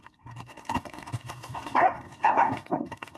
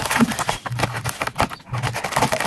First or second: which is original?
second